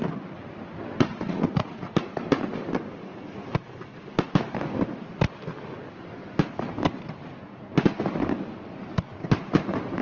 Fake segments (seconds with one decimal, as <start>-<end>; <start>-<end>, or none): 1.1-1.9